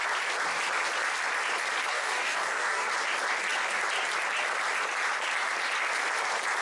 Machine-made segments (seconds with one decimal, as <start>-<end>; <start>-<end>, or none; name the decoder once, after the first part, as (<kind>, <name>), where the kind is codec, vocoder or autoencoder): 1.9-2.9 (codec, DAC)